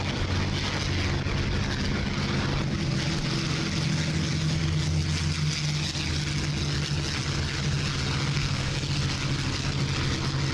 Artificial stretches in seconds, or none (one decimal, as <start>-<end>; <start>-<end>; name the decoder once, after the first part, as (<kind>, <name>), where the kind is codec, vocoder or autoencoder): 8.3-8.8 (codec, SNAC)